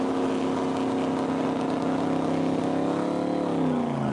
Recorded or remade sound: recorded